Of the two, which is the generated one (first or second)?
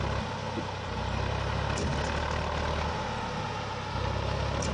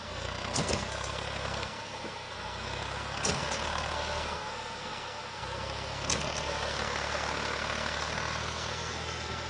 second